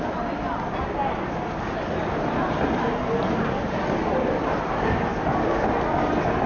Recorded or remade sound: recorded